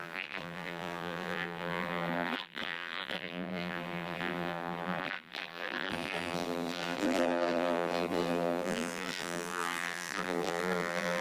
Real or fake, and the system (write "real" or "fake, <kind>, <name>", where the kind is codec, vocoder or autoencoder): fake, vocoder, BigVGAN v2